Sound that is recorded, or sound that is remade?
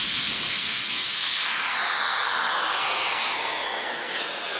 remade